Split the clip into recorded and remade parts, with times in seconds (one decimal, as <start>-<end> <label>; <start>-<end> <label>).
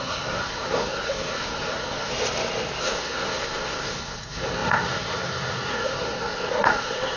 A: 0.0-2.1 remade; 2.1-2.8 recorded; 2.8-7.2 remade